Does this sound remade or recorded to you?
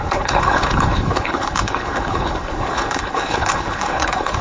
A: remade